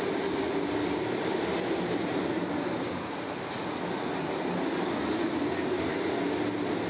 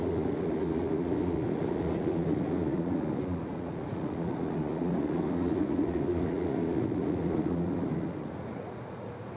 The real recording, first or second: first